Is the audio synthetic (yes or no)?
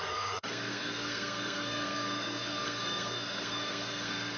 yes